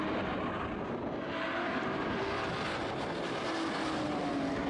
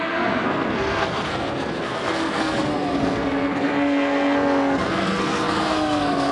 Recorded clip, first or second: first